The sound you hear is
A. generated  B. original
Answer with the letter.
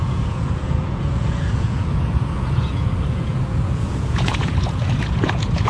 A